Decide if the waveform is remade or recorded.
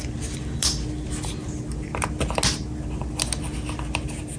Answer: recorded